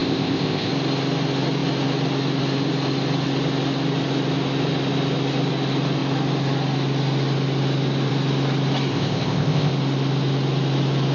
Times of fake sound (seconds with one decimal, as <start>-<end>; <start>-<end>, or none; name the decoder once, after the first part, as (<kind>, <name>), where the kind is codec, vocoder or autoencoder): 0.0-0.7 (codec, ZipCodec); 8.9-9.7